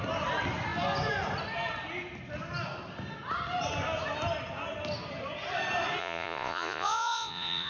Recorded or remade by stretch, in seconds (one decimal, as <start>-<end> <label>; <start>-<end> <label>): 0.0-6.0 recorded; 6.0-7.7 remade